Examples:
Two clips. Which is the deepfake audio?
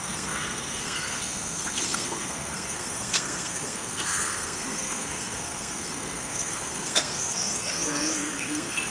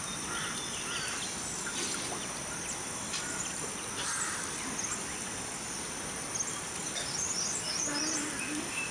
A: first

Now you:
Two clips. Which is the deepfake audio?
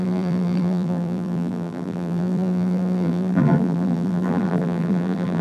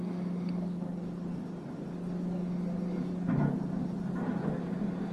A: first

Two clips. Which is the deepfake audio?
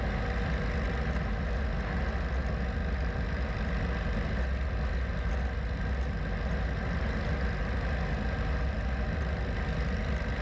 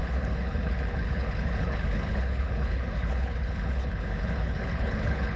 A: second